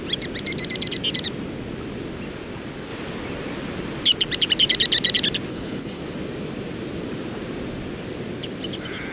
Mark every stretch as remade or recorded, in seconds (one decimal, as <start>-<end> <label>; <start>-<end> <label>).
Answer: 0.0-5.5 recorded; 5.5-6.0 remade; 6.0-9.1 recorded